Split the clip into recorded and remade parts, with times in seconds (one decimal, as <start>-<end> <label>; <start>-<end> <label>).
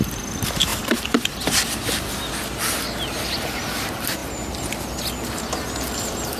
0.0-0.7 recorded; 0.7-1.3 remade; 1.3-6.4 recorded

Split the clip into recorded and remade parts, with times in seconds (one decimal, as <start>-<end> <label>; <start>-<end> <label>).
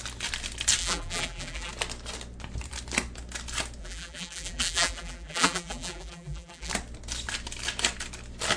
0.0-0.8 recorded; 0.8-1.7 remade; 1.7-3.8 recorded; 3.8-6.7 remade; 6.7-8.6 recorded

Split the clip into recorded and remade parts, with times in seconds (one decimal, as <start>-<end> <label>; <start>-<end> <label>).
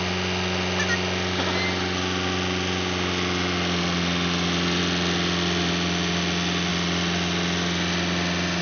0.0-8.6 recorded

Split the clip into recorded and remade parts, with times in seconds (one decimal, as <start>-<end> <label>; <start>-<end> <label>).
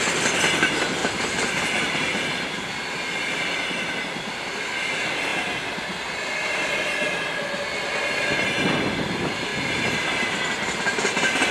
0.0-1.0 recorded; 1.0-2.7 remade; 2.7-11.5 recorded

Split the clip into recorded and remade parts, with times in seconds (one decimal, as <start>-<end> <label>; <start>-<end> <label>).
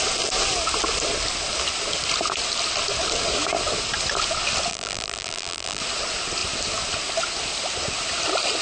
0.0-4.7 recorded; 4.7-5.8 remade; 5.8-8.6 recorded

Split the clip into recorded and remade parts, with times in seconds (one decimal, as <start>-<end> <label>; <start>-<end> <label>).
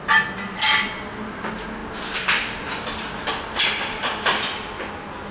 0.0-5.3 recorded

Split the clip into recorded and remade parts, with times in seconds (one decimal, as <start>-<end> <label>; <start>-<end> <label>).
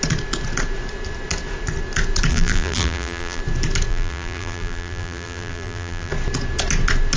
0.0-2.3 recorded; 2.3-3.4 remade; 3.4-3.9 recorded; 3.9-6.1 remade; 6.1-7.2 recorded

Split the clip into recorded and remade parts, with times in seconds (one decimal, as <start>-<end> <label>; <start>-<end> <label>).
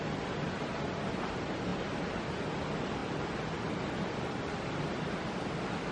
0.0-3.0 recorded; 3.0-5.5 remade; 5.5-5.9 recorded